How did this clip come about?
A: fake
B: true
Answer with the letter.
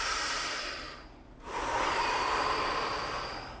B